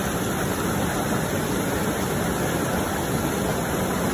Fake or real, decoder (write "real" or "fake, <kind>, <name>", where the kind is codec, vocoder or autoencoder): real